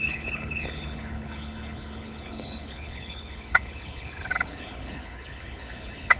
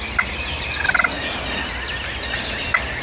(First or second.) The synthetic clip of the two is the first